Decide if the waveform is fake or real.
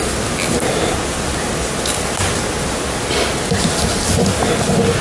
real